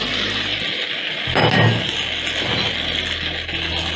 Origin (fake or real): real